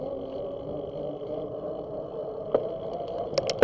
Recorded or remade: recorded